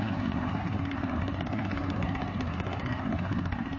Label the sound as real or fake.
fake